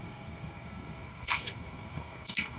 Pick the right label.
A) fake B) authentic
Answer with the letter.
A